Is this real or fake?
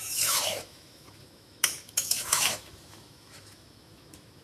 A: fake